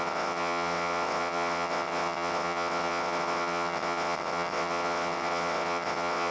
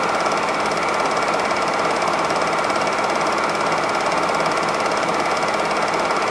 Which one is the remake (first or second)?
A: first